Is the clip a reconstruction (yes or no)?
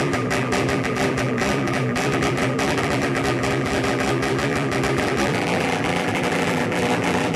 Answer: yes